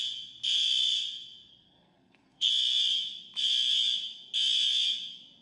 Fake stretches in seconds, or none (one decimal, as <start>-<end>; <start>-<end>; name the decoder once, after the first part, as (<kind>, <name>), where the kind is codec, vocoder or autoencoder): 1.5-2.5 (codec, SNAC)